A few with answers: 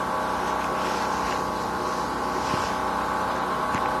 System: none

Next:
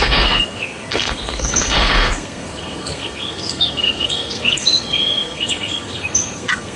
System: codec, SNAC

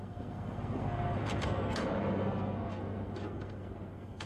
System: codec, SNAC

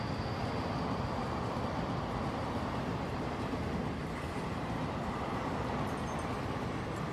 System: none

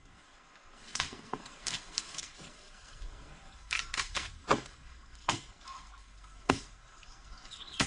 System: codec, SNAC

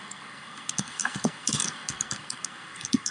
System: codec, SNAC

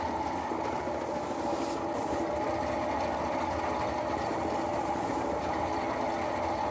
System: none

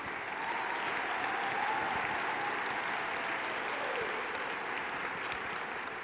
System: none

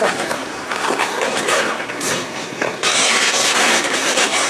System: codec, SNAC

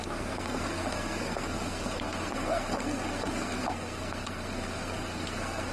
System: codec, SNAC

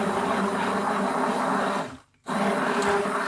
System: none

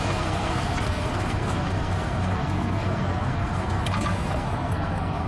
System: codec, SNAC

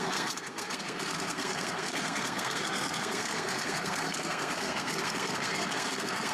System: codec, SNAC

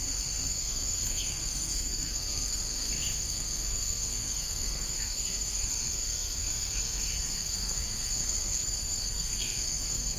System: codec, SNAC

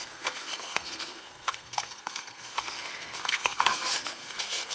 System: codec, SNAC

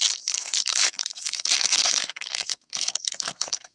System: codec, SNAC